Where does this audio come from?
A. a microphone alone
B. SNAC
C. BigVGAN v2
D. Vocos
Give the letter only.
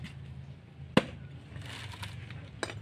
A